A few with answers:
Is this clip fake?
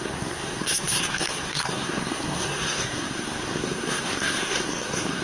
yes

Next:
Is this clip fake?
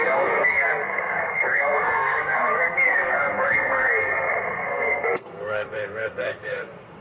yes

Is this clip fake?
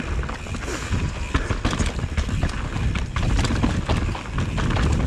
no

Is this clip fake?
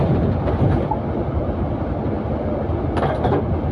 no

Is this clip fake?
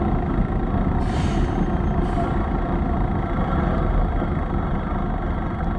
no